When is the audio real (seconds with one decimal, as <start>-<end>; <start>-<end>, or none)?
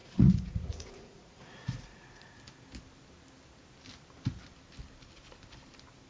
2.4-6.1